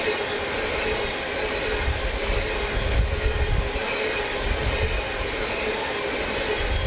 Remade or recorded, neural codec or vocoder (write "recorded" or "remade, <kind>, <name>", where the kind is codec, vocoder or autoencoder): recorded